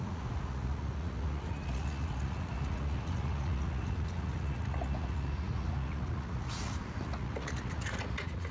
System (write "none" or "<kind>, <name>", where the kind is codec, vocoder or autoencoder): vocoder, Vocos